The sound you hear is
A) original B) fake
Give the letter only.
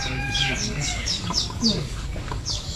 B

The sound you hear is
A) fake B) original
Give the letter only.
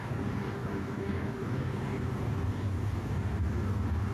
A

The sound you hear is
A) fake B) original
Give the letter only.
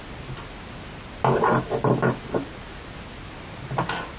B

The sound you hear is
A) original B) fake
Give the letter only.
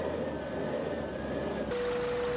A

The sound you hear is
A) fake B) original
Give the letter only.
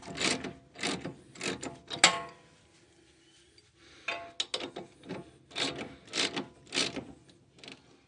B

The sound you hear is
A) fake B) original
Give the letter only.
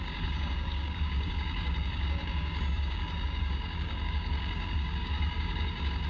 A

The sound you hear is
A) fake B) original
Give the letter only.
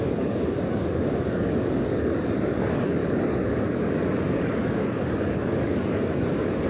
A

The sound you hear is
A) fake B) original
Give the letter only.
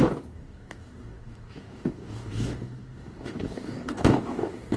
A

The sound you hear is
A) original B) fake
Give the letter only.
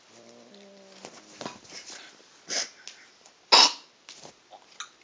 A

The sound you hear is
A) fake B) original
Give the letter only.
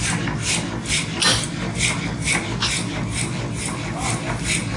B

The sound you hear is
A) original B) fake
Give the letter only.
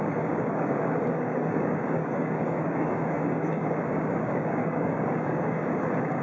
B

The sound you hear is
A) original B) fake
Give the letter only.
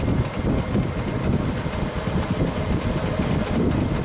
A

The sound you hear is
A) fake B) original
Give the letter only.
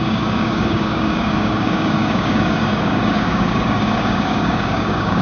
A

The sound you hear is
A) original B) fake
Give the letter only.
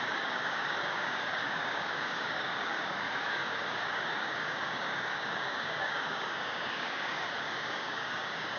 B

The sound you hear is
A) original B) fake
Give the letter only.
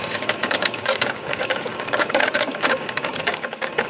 B